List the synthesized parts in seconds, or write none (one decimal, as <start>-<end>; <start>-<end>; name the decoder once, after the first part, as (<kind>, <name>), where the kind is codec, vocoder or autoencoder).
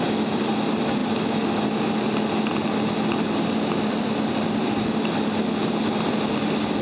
none